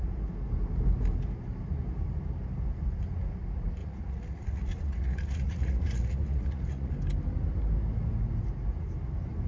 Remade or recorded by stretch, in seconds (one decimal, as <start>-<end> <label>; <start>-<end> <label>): 0.0-3.8 recorded; 3.8-6.9 remade; 6.9-9.5 recorded